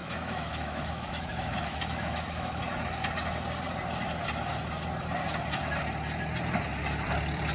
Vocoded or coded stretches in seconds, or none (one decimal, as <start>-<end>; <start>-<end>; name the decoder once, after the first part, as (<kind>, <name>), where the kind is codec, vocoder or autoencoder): 0.0-2.6 (autoencoder, DAC-VAE)